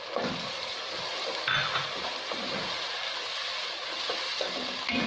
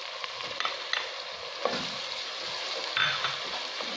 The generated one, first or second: first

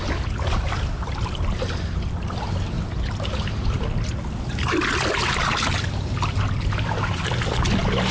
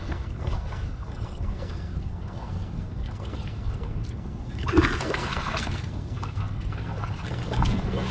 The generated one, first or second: second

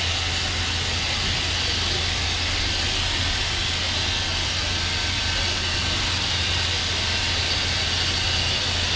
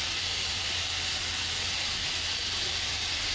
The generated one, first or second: second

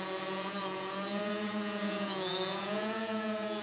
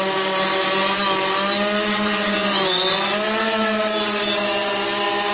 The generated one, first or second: first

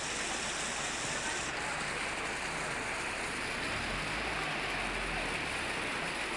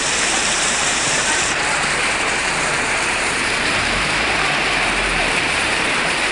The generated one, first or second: second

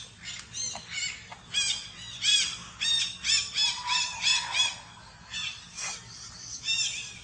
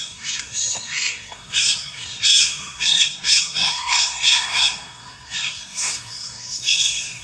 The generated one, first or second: second